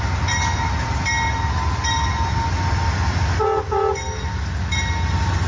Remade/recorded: recorded